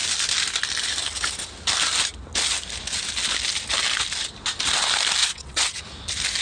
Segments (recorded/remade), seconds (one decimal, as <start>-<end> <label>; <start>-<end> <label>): 0.0-5.2 recorded; 5.2-5.8 remade; 5.8-6.4 recorded